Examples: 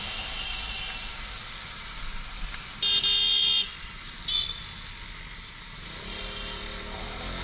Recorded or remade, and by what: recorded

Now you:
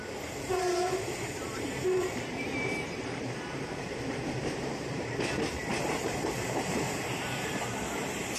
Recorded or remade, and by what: remade, vocoder, BigVGAN v2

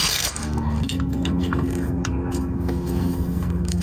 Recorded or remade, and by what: remade, codec, SNAC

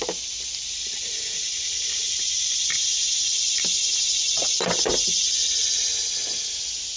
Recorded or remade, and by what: recorded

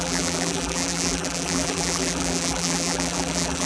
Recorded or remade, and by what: remade, vocoder, BigVGAN v2